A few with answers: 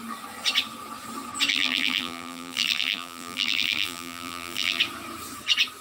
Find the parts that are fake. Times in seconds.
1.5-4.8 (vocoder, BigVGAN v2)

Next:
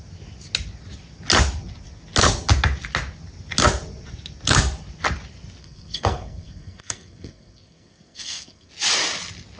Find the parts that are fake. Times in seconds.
5.6-8.7 (codec, SNAC)

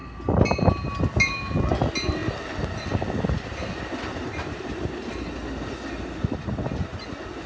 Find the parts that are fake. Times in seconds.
none

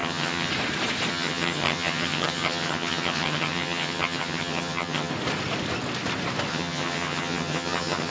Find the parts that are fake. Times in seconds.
0.0-0.5 (vocoder, HiFi-GAN); 1.1-5.1; 6.5-8.1

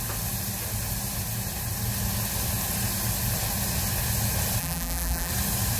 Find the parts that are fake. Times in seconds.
4.6-5.3 (vocoder, BigVGAN v2)

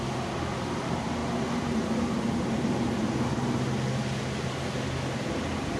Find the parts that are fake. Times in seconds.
none

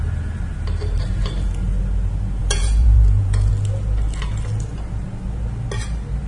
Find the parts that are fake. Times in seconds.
2.4-3.5 (vocoder, Vocos)